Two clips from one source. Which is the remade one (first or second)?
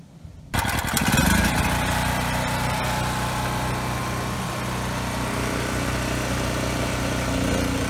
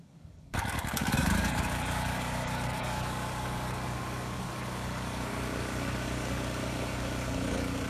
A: second